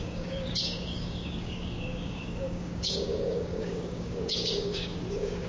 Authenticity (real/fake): fake